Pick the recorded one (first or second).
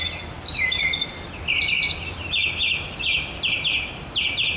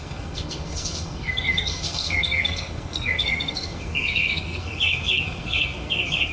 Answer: first